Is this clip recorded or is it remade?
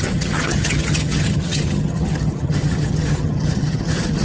remade